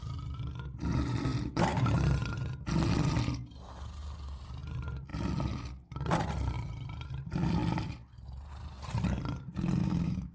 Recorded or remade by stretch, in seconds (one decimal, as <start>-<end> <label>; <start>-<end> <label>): 0.0-9.8 recorded; 9.8-10.3 remade